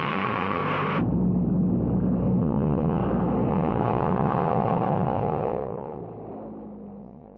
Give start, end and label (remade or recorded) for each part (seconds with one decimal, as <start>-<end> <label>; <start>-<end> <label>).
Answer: 0.0-0.6 remade; 0.6-2.4 recorded; 2.4-3.0 remade; 3.0-3.5 recorded; 3.5-6.0 remade; 6.0-7.0 recorded; 7.0-7.4 remade